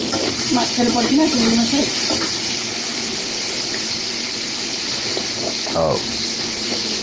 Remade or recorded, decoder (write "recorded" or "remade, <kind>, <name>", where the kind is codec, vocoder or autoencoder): recorded